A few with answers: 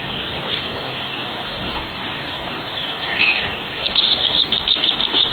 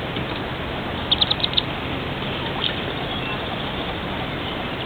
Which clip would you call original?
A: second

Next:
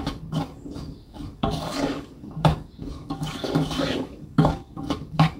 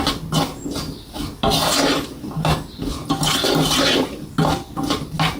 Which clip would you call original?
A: second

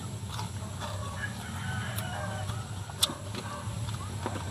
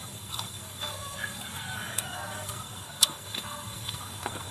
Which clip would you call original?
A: first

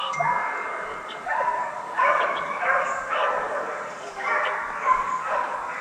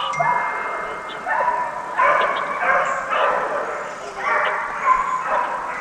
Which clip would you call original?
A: second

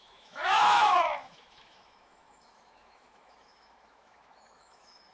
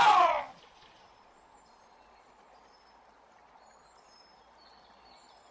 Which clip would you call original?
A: second